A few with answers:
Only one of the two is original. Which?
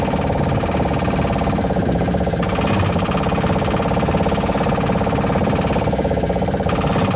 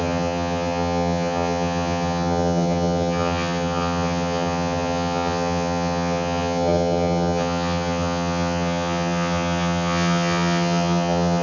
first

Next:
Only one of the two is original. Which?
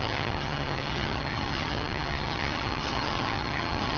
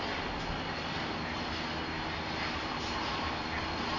second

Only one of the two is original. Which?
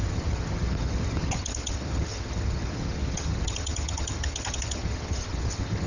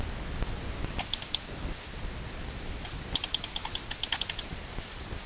second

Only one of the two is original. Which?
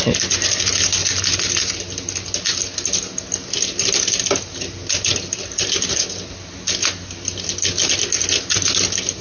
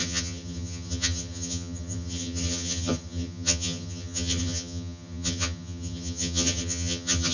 first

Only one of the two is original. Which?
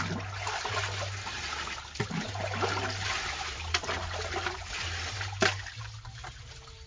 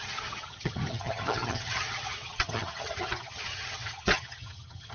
first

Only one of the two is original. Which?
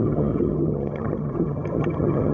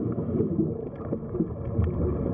second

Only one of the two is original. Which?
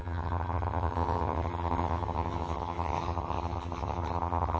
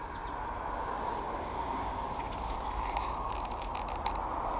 second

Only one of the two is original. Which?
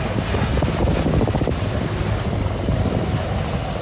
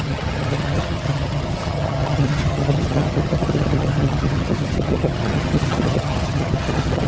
first